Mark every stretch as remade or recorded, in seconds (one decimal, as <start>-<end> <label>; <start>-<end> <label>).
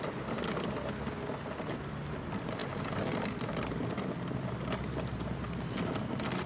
0.0-6.5 recorded